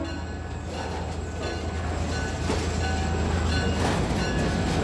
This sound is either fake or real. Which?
real